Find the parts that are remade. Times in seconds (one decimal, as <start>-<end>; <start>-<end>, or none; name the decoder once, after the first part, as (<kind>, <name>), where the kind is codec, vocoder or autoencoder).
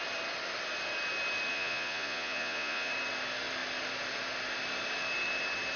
1.5-2.9 (vocoder, Vocos)